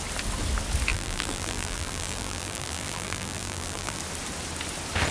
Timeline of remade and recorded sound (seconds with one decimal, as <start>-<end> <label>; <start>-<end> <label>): 0.0-0.9 recorded; 0.9-4.0 remade; 4.0-5.1 recorded